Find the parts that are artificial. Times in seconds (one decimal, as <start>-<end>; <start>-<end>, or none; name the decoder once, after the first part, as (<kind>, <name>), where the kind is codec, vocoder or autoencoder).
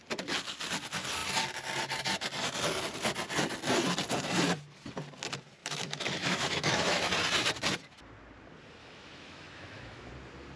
5.6-7.1 (autoencoder, DAC-VAE); 8.8-10.1